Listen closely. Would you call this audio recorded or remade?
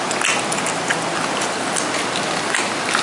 recorded